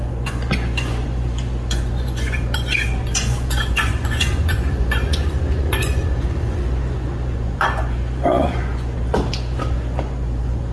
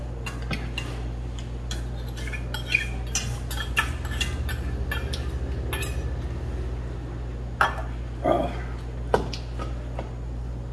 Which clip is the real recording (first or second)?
second